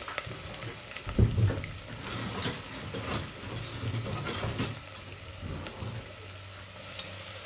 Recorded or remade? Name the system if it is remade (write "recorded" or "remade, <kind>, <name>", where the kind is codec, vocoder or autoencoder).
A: recorded